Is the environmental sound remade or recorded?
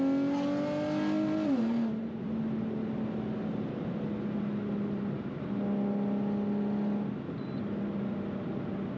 recorded